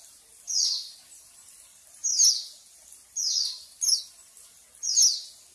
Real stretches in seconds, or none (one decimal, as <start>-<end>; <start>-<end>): 0.0-5.5